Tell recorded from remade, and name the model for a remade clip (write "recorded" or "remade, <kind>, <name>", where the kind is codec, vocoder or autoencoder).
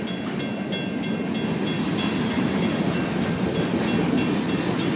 recorded